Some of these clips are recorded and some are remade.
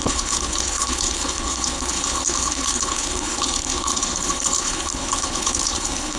remade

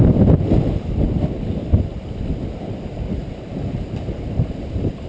remade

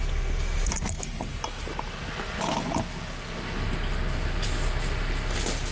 recorded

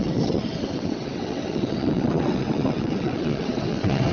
remade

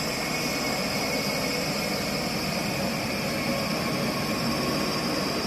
recorded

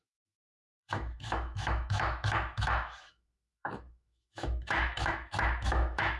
remade